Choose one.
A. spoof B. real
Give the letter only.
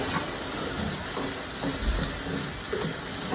B